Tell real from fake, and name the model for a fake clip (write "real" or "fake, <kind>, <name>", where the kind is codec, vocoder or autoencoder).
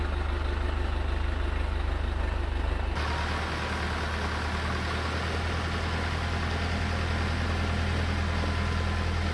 real